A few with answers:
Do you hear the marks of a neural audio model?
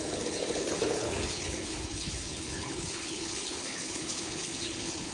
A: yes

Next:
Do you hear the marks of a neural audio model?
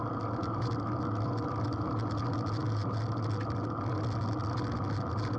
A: no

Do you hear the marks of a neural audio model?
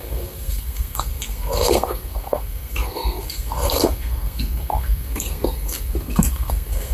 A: yes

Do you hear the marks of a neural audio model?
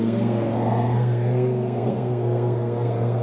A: yes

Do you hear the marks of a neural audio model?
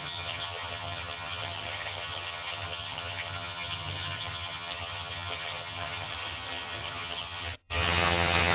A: yes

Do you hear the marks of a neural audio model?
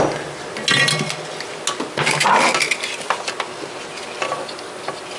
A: no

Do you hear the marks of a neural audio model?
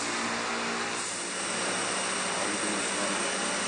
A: no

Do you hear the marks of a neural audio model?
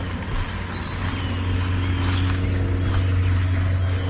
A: no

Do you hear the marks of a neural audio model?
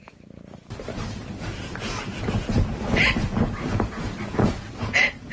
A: yes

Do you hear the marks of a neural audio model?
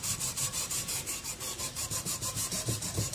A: yes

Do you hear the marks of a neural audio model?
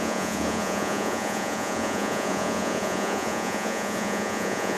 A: yes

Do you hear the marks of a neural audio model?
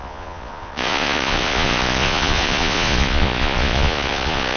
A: yes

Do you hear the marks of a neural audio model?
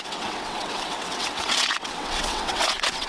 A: yes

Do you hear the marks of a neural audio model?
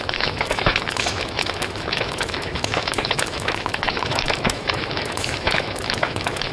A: yes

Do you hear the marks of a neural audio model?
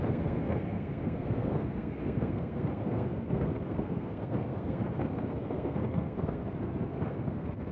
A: yes